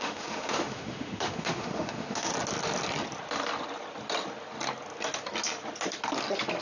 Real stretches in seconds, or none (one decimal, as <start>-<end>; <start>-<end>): 2.3-6.6